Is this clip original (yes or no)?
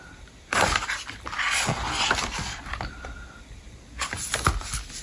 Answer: yes